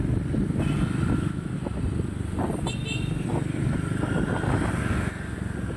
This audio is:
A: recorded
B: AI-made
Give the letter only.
A